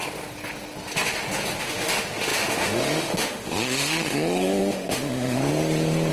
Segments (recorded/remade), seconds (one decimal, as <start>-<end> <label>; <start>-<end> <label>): 0.0-1.6 recorded; 1.6-5.4 remade; 5.4-6.1 recorded